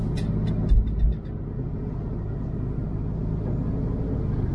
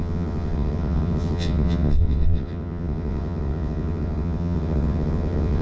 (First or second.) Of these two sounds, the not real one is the second